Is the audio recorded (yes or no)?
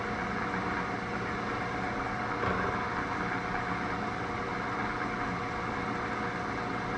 yes